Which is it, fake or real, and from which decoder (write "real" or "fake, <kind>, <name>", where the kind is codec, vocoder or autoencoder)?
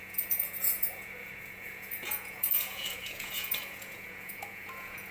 fake, vocoder, Vocos